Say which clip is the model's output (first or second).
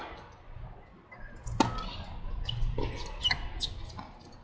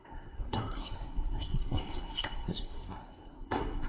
second